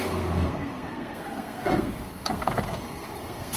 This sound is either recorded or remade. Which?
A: remade